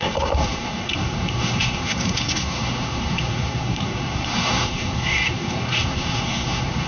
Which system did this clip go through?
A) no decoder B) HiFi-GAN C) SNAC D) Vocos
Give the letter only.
C